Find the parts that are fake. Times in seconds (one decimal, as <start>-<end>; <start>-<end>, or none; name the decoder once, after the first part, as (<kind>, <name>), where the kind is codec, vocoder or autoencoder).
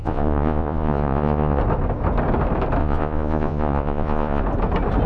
0.0-1.6 (vocoder, Vocos); 2.8-4.4